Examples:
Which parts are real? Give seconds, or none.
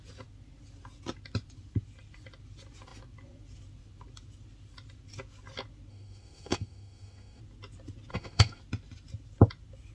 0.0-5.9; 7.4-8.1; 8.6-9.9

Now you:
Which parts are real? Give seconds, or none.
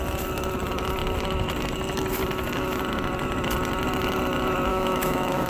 0.0-4.7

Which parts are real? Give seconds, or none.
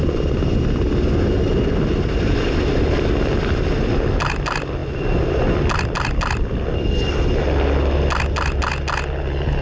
0.0-9.6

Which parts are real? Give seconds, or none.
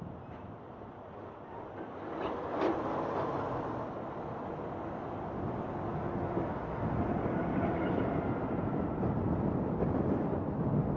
0.0-11.0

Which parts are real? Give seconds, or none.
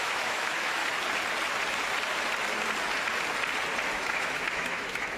0.8-3.9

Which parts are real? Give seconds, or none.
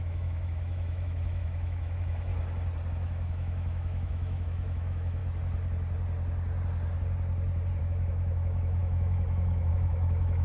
2.3-2.9; 5.2-7.8